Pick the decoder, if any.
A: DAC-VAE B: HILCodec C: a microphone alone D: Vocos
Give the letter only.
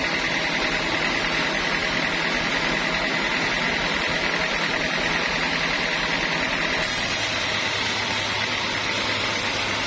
C